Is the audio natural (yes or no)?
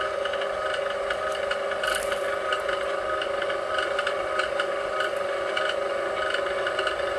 no